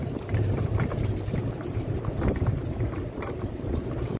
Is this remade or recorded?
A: remade